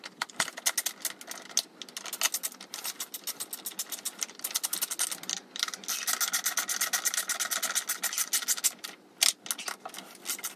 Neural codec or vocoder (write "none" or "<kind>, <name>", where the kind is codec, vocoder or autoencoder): none